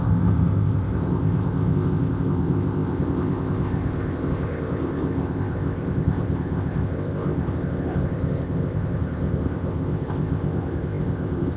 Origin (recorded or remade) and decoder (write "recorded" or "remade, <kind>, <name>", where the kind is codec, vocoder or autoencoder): remade, codec, ZipCodec